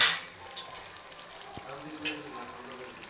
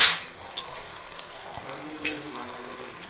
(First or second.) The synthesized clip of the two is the second